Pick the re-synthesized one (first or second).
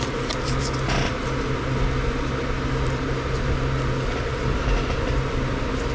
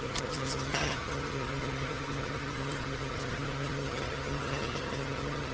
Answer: second